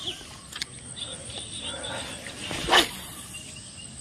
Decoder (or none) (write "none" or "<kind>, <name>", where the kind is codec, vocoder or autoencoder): none